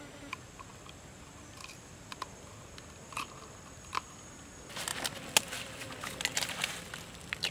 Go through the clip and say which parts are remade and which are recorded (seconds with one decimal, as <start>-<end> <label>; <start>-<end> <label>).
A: 0.0-7.5 recorded